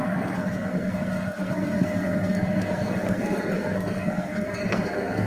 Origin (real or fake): fake